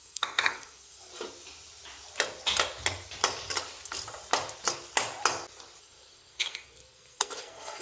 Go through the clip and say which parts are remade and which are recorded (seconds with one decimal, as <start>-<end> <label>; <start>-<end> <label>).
0.0-1.1 remade; 1.1-5.8 recorded; 5.8-7.8 remade